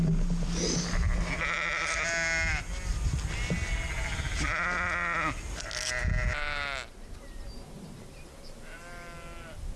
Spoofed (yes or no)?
no